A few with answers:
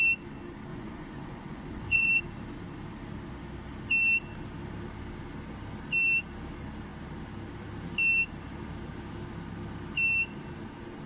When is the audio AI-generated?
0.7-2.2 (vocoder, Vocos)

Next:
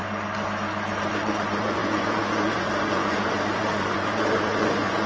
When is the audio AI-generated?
1.1-5.1 (vocoder, Vocos)

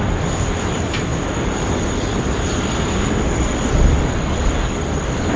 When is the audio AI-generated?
none

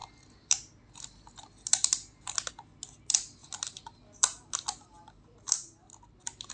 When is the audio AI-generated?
none